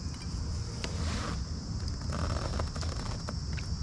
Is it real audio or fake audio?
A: real